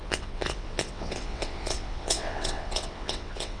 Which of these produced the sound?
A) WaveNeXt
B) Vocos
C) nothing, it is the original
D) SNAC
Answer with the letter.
A